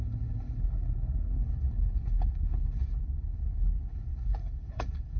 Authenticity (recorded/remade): remade